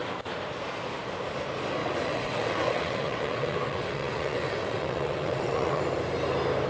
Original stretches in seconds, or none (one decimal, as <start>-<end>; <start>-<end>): 0.0-1.8; 5.8-6.7